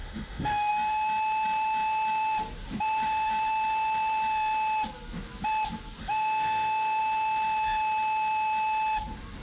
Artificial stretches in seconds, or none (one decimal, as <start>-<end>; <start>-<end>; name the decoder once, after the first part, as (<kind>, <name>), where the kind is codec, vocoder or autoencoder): 0.0-0.7 (autoencoder, DAC-VAE); 6.0-7.0